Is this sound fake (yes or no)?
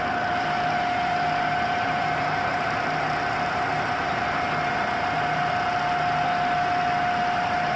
no